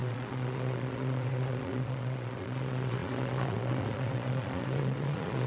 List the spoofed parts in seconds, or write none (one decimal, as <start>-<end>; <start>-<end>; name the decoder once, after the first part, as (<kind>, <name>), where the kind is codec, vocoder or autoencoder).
0.0-5.5 (vocoder, Vocos)